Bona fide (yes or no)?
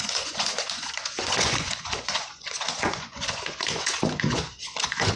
no